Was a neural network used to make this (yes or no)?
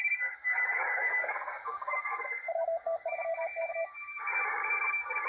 yes